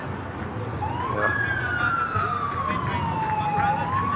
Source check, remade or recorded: recorded